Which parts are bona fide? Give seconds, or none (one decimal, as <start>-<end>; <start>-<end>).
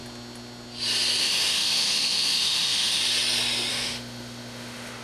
0.0-1.2; 3.0-3.7